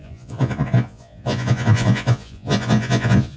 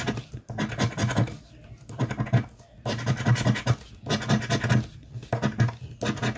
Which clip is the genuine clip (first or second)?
second